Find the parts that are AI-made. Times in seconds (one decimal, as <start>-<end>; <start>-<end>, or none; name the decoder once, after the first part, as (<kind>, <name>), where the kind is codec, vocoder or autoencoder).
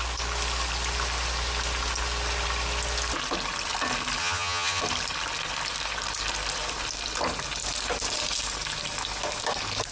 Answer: 4.2-4.8 (vocoder, HiFi-GAN)